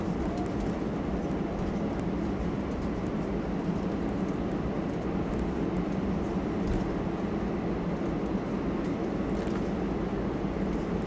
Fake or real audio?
real